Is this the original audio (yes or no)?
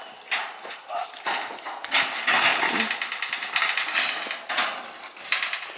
yes